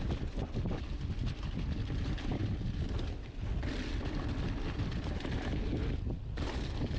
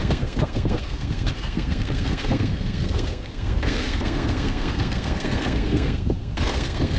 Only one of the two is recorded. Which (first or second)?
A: first